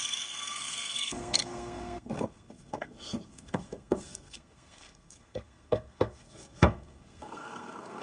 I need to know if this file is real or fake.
fake